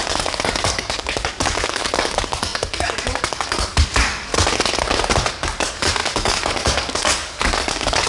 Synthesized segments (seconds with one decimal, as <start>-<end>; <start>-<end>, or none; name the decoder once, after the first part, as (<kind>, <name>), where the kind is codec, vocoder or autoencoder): 0.0-4.3 (codec, DAC); 5.3-8.1